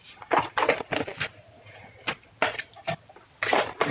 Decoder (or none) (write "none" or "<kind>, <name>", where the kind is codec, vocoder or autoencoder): none